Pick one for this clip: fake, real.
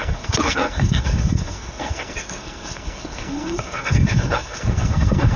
fake